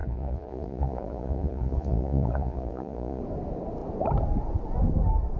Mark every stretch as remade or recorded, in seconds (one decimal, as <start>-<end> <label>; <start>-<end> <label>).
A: 0.0-3.2 remade; 3.2-5.4 recorded